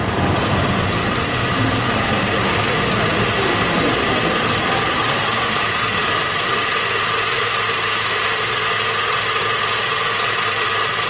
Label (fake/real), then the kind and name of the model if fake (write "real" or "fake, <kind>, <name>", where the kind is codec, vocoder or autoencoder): fake, vocoder, BigVGAN v2